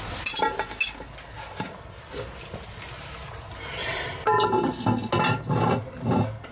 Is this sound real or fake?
real